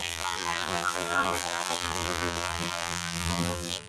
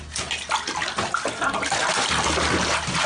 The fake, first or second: first